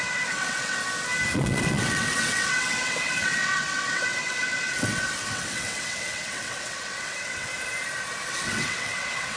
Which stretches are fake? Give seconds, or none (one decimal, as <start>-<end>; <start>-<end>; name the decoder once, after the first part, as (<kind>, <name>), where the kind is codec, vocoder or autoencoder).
0.0-0.8 (vocoder, WaveNeXt); 1.3-7.5; 8.3-9.4